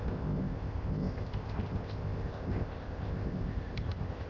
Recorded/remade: remade